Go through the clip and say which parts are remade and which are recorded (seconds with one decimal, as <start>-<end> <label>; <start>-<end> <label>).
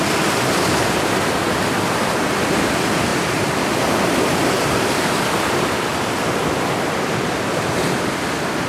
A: 0.0-3.1 recorded; 3.1-7.9 remade; 7.9-8.7 recorded